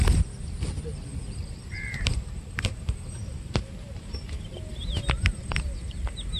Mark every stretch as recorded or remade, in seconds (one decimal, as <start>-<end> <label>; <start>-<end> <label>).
0.0-1.4 recorded; 1.4-4.5 remade; 4.5-6.4 recorded